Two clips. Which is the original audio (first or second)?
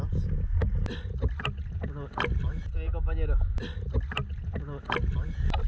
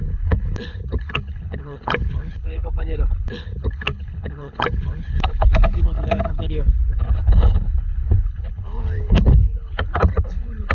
first